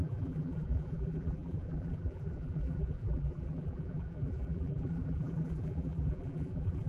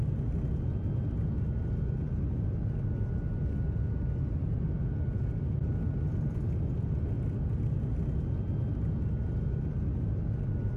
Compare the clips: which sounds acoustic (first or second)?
second